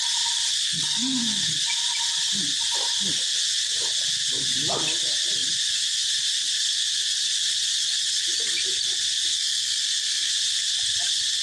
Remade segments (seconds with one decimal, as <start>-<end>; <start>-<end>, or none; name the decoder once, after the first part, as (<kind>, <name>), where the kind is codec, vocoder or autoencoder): 0.6-1.2 (codec, SNAC); 9.3-10.3